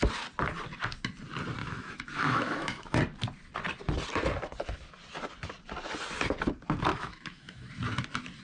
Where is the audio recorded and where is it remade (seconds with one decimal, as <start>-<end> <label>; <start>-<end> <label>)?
0.0-1.6 recorded; 1.6-3.0 remade; 3.0-6.9 recorded; 6.9-7.7 remade; 7.7-8.4 recorded